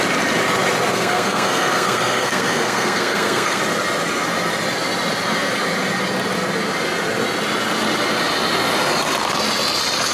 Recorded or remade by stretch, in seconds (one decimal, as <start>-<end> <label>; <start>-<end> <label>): 0.0-0.9 recorded; 0.9-3.6 remade; 3.6-10.1 recorded